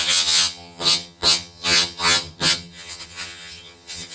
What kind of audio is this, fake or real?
fake